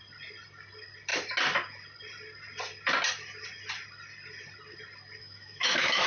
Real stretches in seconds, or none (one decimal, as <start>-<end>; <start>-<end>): 0.0-5.2